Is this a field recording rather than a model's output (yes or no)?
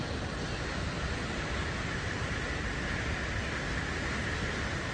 yes